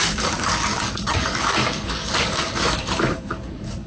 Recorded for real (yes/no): no